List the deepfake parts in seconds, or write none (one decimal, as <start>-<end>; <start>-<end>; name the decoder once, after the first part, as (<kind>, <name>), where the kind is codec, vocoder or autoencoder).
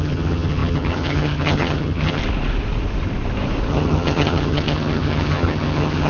0.0-2.2 (vocoder, HiFi-GAN); 3.7-6.1